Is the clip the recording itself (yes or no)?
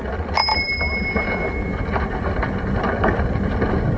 yes